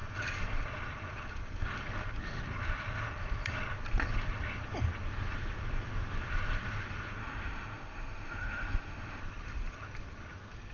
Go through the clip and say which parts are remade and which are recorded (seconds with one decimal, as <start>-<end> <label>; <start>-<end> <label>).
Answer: 0.0-7.2 recorded; 7.2-9.2 remade; 9.2-10.7 recorded